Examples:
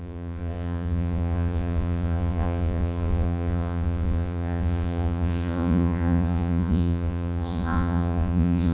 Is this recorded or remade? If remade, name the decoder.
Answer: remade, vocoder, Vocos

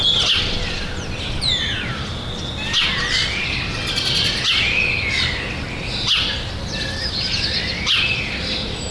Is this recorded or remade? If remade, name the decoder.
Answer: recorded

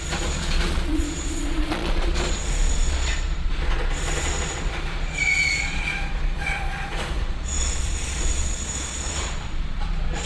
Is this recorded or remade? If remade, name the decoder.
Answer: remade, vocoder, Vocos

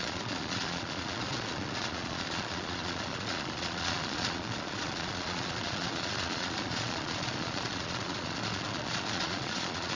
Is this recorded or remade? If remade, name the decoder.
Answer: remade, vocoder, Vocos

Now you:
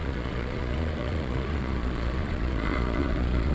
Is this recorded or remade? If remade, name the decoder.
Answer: remade, vocoder, Vocos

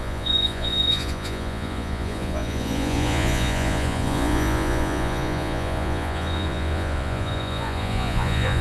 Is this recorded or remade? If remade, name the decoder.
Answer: remade, vocoder, Vocos